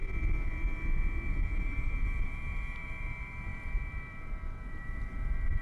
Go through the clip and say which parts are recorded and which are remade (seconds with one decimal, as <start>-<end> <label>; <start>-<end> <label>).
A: 0.0-1.3 recorded; 1.3-5.6 remade